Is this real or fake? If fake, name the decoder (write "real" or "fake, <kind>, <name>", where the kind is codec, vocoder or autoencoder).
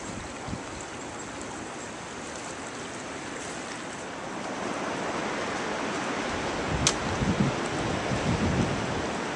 real